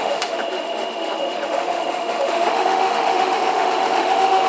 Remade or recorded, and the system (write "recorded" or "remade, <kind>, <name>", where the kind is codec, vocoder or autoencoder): remade, autoencoder, DAC-VAE